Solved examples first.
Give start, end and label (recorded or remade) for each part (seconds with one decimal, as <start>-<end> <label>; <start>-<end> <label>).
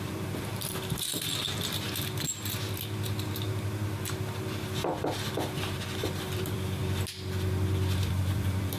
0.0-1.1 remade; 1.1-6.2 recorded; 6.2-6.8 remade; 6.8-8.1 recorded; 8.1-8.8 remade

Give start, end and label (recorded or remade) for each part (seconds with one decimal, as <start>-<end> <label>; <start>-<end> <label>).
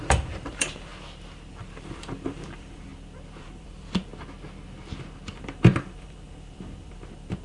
0.0-0.9 remade; 0.9-1.5 recorded; 1.5-2.9 remade; 2.9-3.4 recorded; 3.4-4.1 remade; 4.1-5.3 recorded; 5.3-7.4 remade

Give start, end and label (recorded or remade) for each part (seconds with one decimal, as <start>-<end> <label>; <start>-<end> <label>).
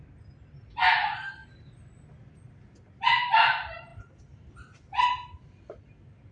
0.0-6.3 recorded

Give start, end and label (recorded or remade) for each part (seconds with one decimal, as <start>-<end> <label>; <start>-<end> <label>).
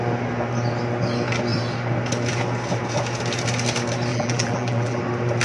0.0-4.1 recorded; 4.1-5.0 remade; 5.0-5.4 recorded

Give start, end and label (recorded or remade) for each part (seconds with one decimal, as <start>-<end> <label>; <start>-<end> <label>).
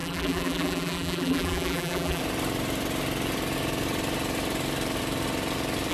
0.0-2.2 remade; 2.2-5.9 recorded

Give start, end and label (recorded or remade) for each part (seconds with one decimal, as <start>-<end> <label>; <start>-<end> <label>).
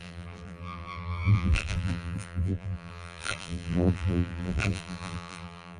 0.0-5.8 remade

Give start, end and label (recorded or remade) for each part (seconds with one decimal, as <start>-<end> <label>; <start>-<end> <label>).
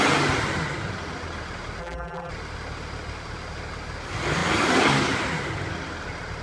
0.0-1.8 recorded; 1.8-2.3 remade; 2.3-6.4 recorded